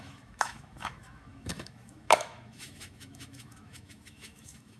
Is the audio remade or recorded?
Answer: remade